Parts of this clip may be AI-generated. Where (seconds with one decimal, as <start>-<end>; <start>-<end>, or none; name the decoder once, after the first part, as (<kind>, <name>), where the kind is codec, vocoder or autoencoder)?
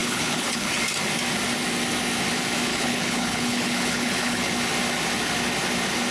0.0-0.7 (codec, HILCodec); 2.7-4.5